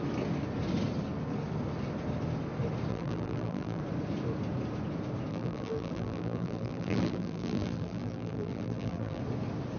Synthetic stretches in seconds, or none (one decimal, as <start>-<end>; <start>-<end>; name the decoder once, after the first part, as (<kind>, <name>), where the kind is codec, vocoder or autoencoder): 2.9-3.8 (vocoder, BigVGAN v2); 5.3-9.2

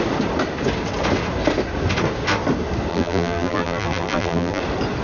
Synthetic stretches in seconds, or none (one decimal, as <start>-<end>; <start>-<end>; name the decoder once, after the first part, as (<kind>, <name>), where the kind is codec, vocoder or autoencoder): 2.9-4.6 (vocoder, BigVGAN v2)